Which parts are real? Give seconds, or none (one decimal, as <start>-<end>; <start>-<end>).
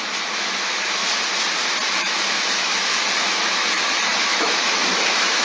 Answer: 1.0-1.9